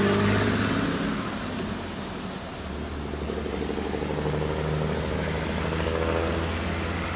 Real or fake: real